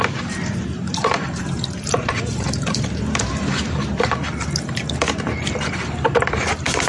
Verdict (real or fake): fake